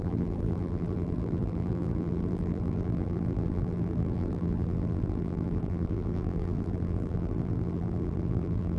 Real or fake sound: fake